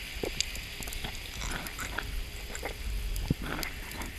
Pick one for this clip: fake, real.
real